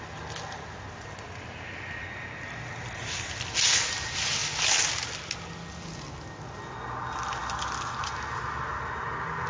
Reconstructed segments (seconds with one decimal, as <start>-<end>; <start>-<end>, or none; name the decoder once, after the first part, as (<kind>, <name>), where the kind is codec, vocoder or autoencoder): none